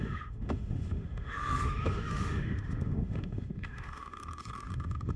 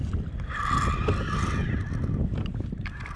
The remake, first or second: first